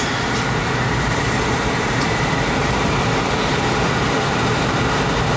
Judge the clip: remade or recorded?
remade